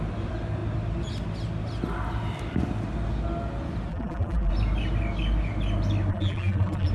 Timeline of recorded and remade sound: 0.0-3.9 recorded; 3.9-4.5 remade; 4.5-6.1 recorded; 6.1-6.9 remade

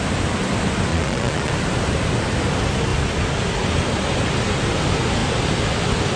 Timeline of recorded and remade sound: 0.0-0.9 recorded; 0.9-1.5 remade; 1.5-6.2 recorded

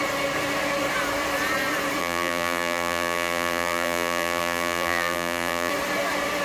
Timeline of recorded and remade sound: 0.0-2.0 recorded; 2.0-5.7 remade; 5.7-6.4 recorded

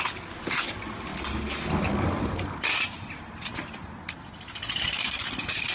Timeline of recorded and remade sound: 0.0-5.7 recorded